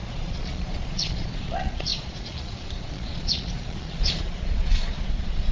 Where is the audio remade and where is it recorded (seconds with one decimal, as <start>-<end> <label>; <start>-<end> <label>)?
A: 0.0-5.5 remade